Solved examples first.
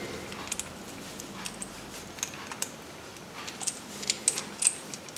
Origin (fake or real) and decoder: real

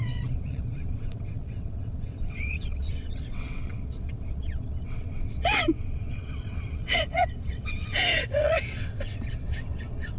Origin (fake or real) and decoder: fake, vocoder, WaveNeXt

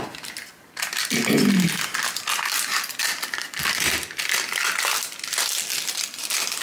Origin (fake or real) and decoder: real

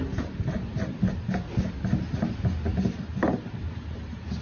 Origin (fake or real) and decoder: real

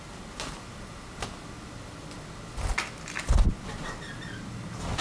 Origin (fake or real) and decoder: real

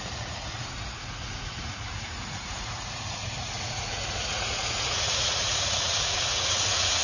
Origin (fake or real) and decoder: fake, vocoder, Vocos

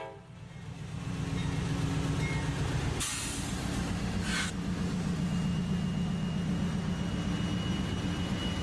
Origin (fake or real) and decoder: real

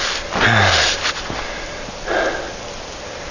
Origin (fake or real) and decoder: real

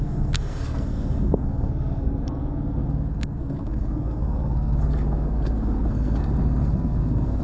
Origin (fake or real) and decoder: fake, codec, SNAC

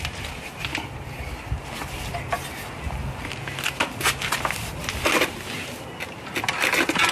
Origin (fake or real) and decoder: real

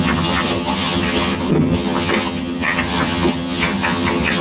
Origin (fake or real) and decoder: fake, vocoder, HiFi-GAN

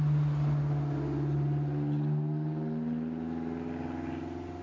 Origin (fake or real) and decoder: real